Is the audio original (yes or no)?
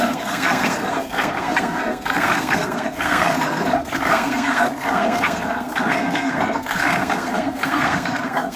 no